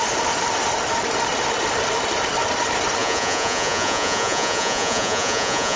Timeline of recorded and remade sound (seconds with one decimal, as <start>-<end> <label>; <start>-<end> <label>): 0.0-3.0 recorded; 3.0-5.8 remade

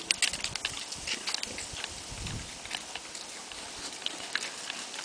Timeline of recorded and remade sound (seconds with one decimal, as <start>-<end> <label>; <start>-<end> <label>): 0.0-5.0 recorded

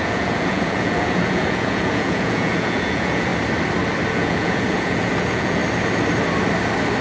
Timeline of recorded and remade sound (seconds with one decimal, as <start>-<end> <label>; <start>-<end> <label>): 0.0-3.3 remade; 3.3-4.1 recorded; 4.1-5.6 remade; 5.6-7.0 recorded

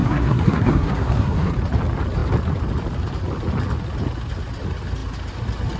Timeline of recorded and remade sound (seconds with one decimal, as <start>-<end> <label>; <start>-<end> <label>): 0.0-1.5 remade; 1.5-5.8 recorded

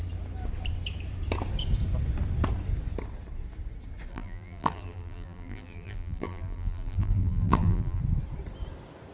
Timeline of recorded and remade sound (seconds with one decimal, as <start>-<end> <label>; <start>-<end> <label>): 0.0-4.1 recorded; 4.1-8.0 remade; 8.0-9.1 recorded

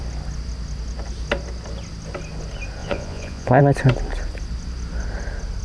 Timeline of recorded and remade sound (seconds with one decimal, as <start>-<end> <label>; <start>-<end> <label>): 0.0-2.8 recorded; 2.8-3.6 remade; 3.6-5.6 recorded